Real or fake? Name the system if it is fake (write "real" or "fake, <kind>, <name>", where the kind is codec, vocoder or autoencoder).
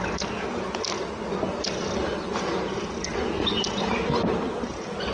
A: real